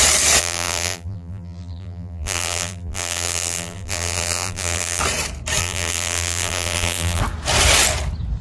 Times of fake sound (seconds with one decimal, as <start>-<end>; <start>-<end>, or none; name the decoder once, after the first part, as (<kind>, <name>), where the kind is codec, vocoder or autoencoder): 0.4-5.0 (vocoder, BigVGAN v2); 5.6-7.2